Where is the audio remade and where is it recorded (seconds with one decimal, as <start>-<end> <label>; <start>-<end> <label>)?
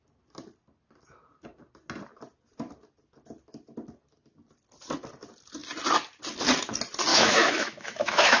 0.0-7.1 recorded; 7.1-8.4 remade